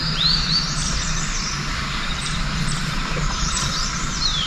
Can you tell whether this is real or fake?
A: fake